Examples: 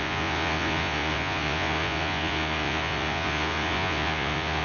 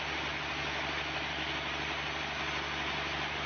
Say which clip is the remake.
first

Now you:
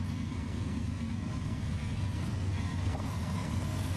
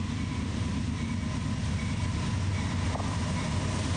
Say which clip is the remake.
first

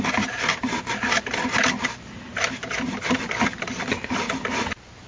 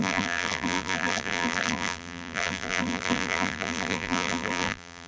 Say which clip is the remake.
second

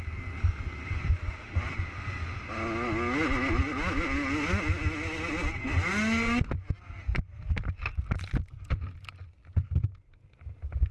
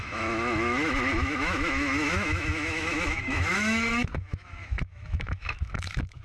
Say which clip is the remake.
second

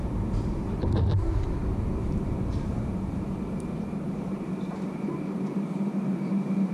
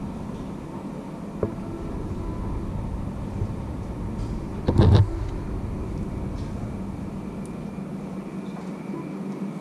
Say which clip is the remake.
first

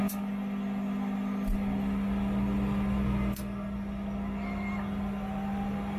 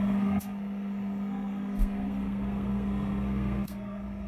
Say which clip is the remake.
second